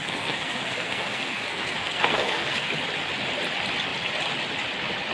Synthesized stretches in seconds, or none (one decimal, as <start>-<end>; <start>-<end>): 0.0-2.7

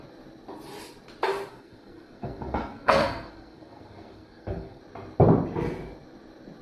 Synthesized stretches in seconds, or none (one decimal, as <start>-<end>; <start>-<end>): 1.5-4.8

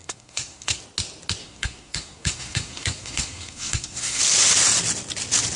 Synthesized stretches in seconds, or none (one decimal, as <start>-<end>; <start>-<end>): 0.0-0.8; 1.4-4.2